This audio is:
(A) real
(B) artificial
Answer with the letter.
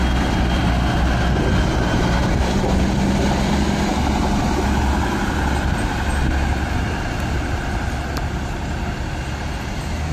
A